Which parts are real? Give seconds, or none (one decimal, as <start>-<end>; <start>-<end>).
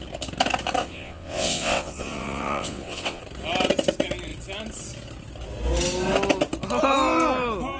0.0-0.8; 3.2-7.8